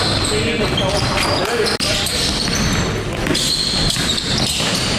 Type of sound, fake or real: real